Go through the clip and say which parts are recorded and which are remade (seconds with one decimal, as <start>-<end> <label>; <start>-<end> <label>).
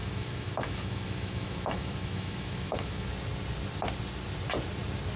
0.0-3.1 remade; 3.1-5.2 recorded